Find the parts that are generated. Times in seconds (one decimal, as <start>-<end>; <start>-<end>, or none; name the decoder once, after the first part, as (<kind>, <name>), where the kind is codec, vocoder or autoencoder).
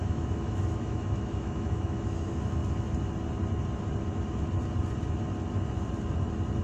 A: 0.0-2.6 (autoencoder, DAC-VAE)